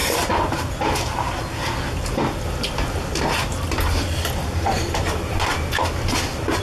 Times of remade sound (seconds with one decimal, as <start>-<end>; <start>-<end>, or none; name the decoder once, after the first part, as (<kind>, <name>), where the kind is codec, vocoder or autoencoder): 4.0-5.5 (vocoder, BigVGAN v2)